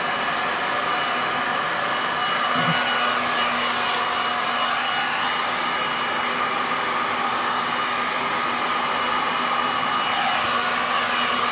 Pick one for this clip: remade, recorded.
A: recorded